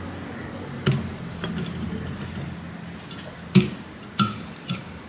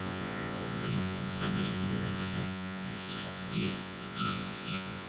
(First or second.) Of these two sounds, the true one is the first